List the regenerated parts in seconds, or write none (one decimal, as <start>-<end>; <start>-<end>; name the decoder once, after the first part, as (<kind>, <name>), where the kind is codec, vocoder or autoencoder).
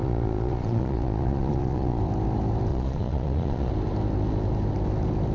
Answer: 0.0-2.0 (vocoder, Vocos); 2.7-3.7